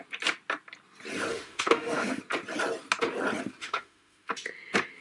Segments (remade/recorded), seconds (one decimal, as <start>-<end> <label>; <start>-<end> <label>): 0.0-1.3 recorded; 1.3-2.2 remade; 2.2-3.6 recorded; 3.6-4.3 remade; 4.3-5.0 recorded